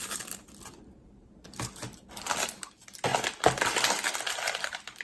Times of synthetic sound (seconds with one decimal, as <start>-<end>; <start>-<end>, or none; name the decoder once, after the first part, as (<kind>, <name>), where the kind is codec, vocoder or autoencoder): none